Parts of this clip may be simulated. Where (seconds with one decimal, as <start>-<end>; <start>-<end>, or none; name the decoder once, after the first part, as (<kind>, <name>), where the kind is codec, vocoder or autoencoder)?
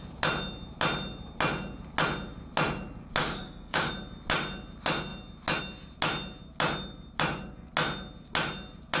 3.2-3.9 (codec, DAC)